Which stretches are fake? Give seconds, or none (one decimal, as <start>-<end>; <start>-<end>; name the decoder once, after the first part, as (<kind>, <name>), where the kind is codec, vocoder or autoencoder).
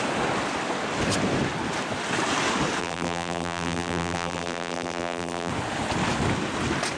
2.8-5.5 (vocoder, BigVGAN v2)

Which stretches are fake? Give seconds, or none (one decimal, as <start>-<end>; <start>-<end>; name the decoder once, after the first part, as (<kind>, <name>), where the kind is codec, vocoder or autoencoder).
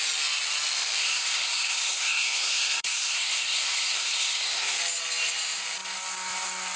1.0-4.8 (codec, SNAC)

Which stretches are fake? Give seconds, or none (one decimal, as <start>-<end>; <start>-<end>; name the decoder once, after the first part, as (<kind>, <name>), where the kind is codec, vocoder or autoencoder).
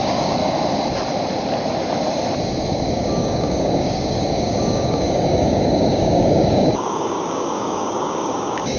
0.0-0.4 (codec, DAC); 2.7-8.8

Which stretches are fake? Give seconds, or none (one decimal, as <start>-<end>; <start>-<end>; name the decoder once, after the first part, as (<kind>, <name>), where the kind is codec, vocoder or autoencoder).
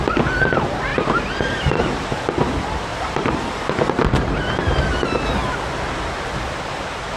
0.9-1.8 (vocoder, BigVGAN v2); 2.9-5.0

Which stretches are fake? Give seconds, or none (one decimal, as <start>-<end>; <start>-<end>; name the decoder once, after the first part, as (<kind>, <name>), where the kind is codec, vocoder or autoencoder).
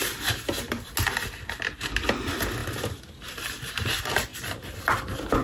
none